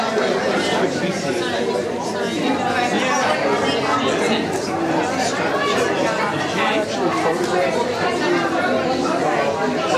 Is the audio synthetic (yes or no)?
no